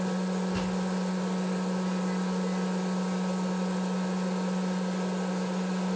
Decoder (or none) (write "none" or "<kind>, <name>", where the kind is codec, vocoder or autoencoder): none